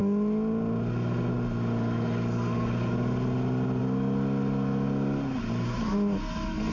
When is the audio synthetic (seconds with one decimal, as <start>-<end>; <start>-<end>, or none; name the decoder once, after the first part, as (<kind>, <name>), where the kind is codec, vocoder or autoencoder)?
none